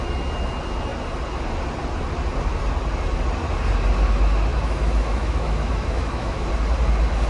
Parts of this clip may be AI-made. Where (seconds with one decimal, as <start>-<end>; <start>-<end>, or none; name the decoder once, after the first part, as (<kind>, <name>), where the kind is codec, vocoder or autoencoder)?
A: 4.5-6.5 (autoencoder, DAC-VAE)